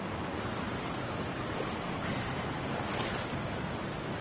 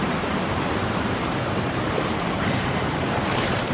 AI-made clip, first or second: second